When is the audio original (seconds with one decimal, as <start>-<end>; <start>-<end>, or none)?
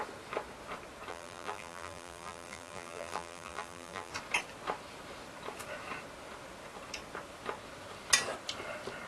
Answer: 0.0-1.1; 4.1-9.1